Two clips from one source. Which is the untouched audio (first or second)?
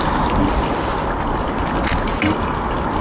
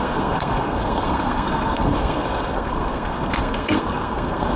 first